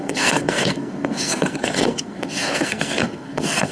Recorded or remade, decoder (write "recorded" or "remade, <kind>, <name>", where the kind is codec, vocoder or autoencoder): remade, codec, SNAC